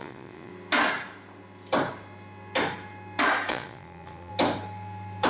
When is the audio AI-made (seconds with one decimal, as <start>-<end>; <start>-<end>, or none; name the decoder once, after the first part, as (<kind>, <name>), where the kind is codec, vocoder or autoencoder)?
0.0-0.5 (vocoder, Vocos); 3.5-4.3